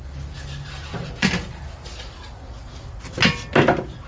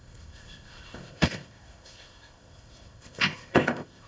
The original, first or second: first